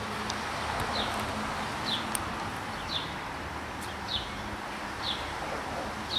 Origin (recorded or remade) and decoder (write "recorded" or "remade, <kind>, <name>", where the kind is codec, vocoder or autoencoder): recorded